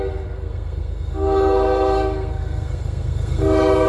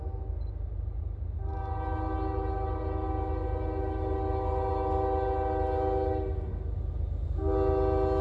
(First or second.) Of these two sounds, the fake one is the first